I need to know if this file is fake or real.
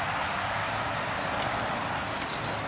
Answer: real